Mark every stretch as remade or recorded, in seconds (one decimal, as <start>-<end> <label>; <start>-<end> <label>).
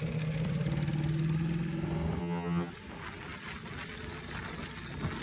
0.0-2.2 recorded; 2.2-2.7 remade; 2.7-5.2 recorded